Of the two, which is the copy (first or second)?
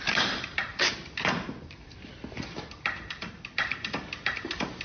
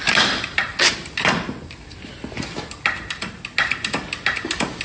first